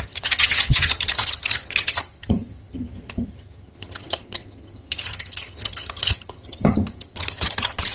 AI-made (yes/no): yes